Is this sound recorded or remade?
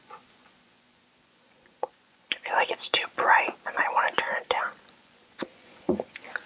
remade